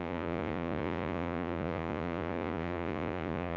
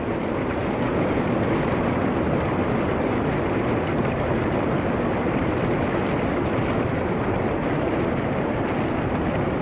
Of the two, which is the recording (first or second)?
second